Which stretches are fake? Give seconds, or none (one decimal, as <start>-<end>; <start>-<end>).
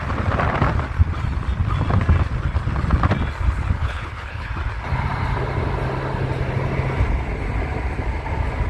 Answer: 3.8-4.5